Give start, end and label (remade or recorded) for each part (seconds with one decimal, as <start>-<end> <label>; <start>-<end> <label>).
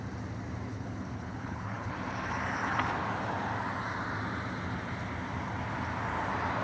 0.0-0.7 recorded; 0.7-1.9 remade; 1.9-6.6 recorded